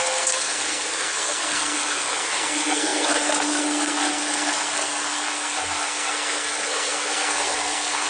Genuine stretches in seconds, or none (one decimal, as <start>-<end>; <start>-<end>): none